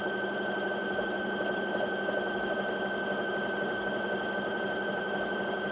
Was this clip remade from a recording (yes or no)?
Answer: no